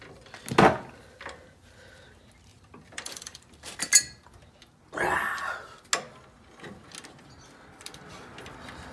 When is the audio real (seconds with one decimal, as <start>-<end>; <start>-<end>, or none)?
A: 0.0-2.5; 3.9-8.9